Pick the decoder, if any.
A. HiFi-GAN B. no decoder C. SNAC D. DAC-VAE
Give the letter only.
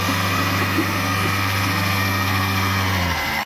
C